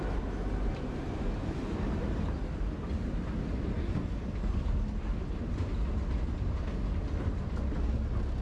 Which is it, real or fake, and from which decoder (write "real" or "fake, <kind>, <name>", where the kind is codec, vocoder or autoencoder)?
real